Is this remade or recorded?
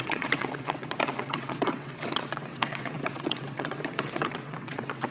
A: remade